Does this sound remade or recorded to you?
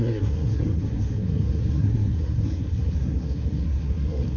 remade